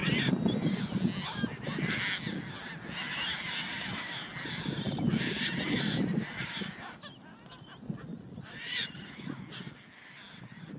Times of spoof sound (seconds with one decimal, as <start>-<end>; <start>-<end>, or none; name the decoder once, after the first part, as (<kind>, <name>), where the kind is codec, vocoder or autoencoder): 8.1-9.4 (vocoder, Vocos)